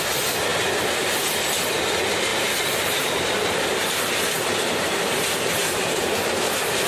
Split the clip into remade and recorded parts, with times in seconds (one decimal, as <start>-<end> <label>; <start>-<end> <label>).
0.0-2.3 recorded; 2.3-6.4 remade; 6.4-6.9 recorded